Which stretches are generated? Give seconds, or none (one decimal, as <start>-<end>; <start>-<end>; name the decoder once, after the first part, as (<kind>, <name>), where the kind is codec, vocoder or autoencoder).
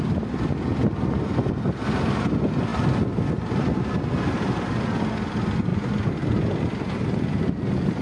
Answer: none